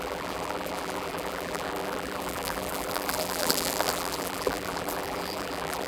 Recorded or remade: remade